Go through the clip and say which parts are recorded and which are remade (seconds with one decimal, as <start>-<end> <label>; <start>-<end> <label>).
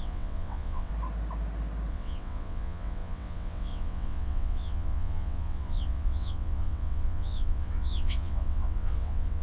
0.0-0.9 remade; 0.9-1.9 recorded; 1.9-9.4 remade